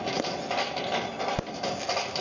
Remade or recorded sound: recorded